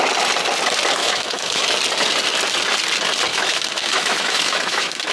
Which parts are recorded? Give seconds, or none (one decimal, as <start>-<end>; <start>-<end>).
0.0-1.0; 1.6-3.3